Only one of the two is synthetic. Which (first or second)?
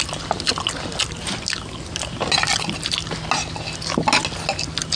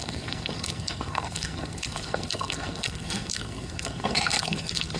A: second